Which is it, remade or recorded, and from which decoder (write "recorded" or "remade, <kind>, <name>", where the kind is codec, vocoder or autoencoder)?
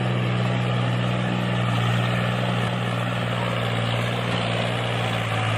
recorded